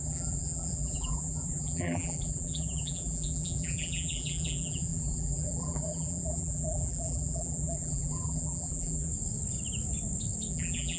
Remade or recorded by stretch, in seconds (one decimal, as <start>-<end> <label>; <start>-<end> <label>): 0.0-9.1 remade; 9.1-10.5 recorded; 10.5-11.0 remade